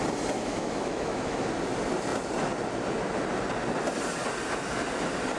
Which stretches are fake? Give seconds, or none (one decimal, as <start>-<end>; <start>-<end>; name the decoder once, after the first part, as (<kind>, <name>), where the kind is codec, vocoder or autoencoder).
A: 0.4-1.5 (autoencoder, DAC-VAE)